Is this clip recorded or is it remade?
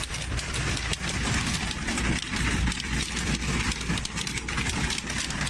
remade